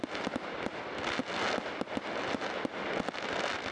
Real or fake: real